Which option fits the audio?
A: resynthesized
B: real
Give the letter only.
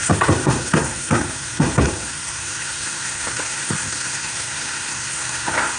A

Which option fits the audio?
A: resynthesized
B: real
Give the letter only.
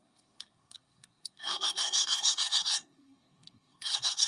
A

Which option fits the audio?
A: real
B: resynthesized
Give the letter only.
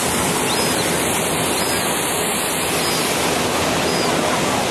A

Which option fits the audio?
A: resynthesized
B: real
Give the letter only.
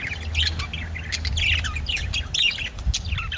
B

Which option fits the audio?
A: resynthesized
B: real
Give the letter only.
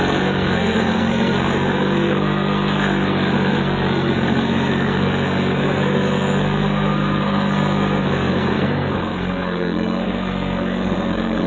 A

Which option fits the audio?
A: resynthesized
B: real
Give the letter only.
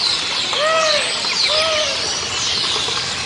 B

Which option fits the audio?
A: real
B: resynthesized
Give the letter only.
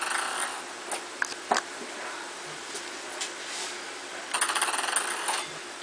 A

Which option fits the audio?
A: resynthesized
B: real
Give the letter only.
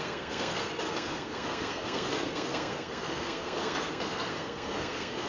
A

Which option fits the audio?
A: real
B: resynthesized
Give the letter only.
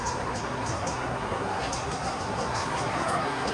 B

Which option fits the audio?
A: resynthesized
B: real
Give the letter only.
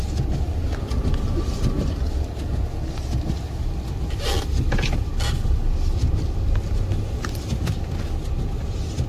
B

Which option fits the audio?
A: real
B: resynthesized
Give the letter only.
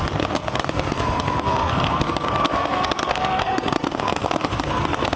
B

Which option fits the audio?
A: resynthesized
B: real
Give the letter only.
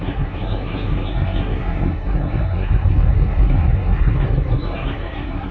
A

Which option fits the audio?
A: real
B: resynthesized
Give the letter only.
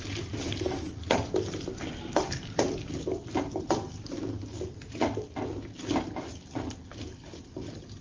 A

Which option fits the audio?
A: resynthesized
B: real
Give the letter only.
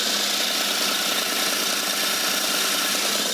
B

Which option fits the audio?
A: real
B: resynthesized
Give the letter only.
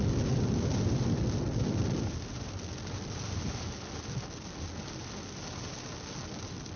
A